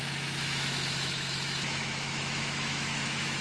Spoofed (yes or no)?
yes